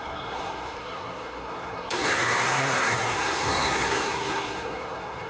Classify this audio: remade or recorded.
remade